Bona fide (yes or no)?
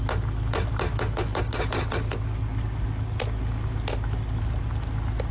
yes